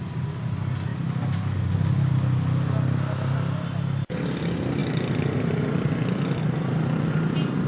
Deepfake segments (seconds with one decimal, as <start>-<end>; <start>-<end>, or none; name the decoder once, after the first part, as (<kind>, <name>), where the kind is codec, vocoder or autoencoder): none